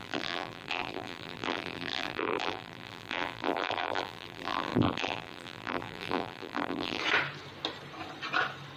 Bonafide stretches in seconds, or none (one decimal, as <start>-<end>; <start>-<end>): 7.0-8.8